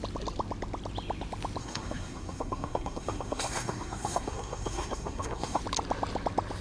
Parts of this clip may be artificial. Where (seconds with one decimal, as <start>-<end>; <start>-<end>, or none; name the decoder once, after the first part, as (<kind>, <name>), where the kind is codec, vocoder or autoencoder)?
1.6-5.6 (codec, SNAC)